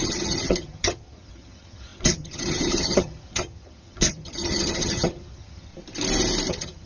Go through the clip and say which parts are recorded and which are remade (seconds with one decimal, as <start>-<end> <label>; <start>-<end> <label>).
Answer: 0.0-5.7 remade; 5.7-6.5 recorded; 6.5-6.9 remade